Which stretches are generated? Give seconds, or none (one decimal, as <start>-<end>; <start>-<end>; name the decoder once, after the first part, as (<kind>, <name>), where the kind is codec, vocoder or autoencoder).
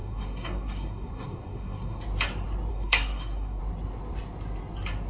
0.0-2.0 (codec, SNAC); 2.7-3.6